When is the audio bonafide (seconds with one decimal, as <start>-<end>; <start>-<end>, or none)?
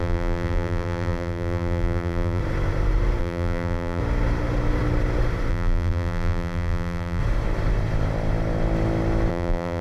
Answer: 2.4-3.2; 4.0-5.5; 7.2-9.3